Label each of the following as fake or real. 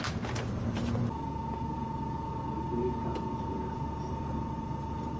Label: real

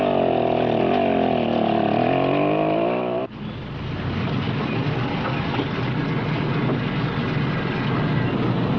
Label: real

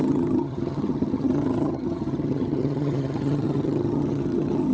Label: fake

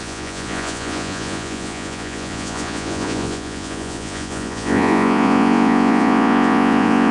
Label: fake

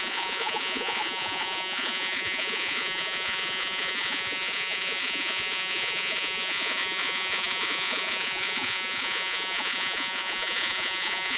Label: fake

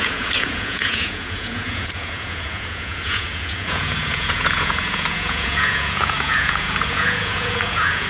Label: fake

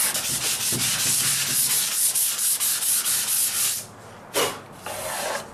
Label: real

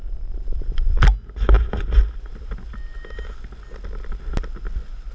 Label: real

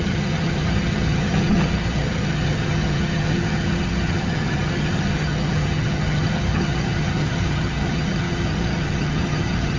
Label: fake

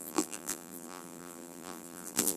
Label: fake